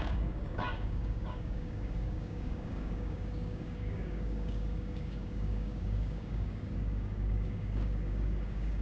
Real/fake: fake